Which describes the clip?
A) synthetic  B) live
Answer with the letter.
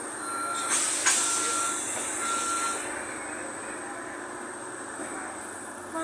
B